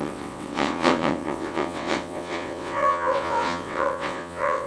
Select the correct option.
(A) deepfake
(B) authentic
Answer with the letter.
A